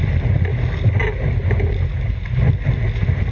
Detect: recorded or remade recorded